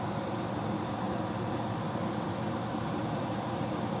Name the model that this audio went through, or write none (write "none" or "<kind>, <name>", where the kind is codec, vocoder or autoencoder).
none